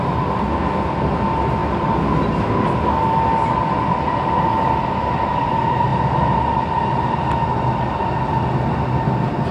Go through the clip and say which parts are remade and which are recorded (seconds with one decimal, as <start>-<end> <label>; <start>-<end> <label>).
0.0-9.5 recorded